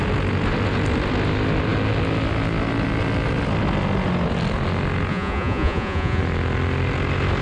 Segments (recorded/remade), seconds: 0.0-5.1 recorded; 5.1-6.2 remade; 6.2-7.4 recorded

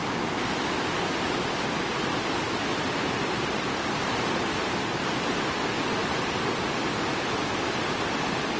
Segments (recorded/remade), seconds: 0.0-8.6 recorded

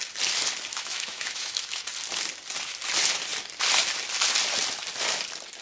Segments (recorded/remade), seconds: 0.0-0.7 recorded; 0.7-1.8 remade; 1.8-5.6 recorded

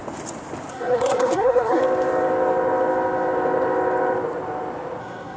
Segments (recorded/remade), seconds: 0.0-0.7 recorded; 0.7-1.8 remade; 1.8-5.0 recorded; 5.0-5.4 remade